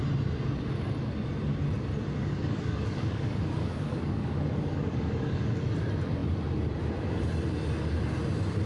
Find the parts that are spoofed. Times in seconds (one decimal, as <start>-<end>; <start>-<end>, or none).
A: 2.2-5.6